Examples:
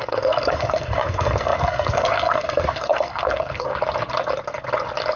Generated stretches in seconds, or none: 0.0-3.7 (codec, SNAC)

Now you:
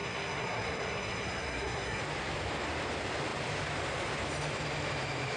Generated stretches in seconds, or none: 0.0-2.0 (codec, SNAC)

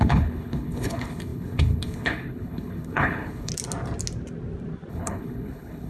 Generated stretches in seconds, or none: 0.0-3.5 (codec, HILCodec); 4.9-5.9